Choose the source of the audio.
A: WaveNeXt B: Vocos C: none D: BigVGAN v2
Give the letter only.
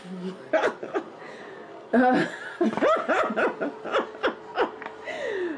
C